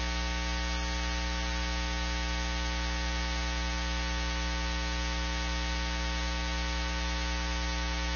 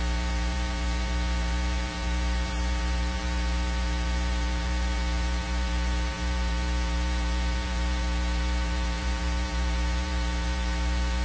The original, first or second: first